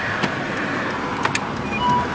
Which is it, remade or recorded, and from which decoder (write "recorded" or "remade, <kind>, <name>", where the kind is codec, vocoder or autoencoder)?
recorded